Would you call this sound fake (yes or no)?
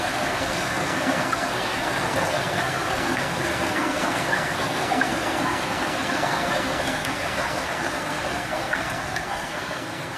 yes